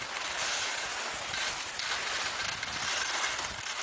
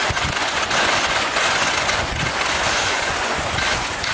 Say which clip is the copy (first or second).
second